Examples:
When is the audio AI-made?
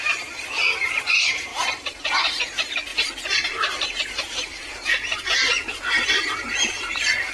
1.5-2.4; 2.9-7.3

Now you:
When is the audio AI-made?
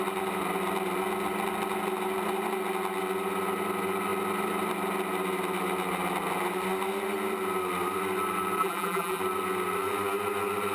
8.6-9.2